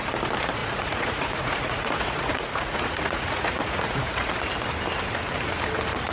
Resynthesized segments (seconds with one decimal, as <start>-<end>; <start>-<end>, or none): 0.6-4.3